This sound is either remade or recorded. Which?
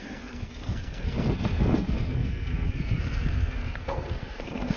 remade